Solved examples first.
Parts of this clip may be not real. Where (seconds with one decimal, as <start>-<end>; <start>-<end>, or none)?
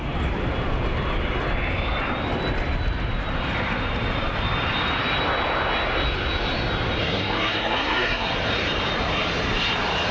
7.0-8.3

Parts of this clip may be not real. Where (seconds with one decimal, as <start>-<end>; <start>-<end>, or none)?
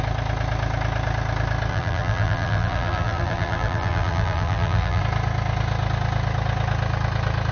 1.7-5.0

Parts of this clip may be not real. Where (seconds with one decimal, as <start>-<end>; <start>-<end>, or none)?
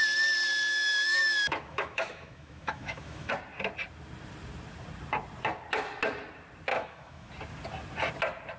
0.7-3.3; 6.7-7.3